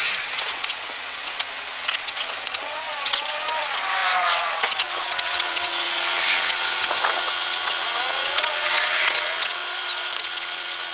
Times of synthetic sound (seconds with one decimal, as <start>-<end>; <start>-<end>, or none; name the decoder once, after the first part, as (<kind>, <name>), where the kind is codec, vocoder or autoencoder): 0.0-9.6 (vocoder, WaveNeXt); 10.2-10.9